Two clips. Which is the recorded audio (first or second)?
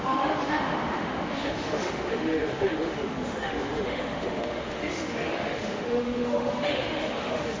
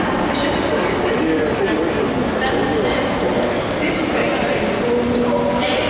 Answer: second